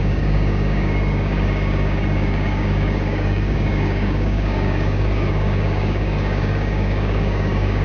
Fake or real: fake